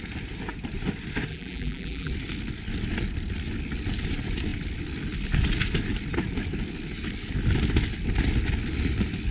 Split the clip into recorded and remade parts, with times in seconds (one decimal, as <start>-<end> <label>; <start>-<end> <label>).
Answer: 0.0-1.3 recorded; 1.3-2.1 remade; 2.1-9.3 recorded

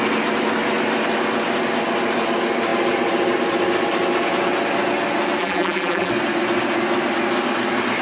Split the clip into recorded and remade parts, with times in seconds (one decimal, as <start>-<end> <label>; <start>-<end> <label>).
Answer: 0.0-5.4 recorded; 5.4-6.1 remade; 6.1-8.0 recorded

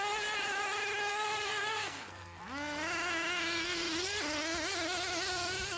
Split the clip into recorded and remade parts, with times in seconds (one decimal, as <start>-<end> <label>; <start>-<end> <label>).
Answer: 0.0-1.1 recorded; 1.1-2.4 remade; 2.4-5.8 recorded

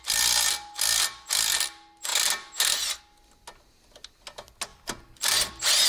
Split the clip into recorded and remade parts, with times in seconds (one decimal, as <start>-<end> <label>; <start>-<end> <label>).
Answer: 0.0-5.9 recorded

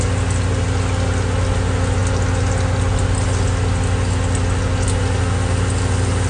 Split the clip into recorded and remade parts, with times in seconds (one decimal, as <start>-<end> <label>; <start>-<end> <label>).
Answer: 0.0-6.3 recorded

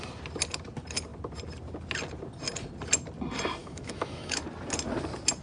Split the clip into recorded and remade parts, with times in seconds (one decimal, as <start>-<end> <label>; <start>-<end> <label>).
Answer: 0.0-3.6 recorded; 3.6-4.4 remade; 4.4-5.4 recorded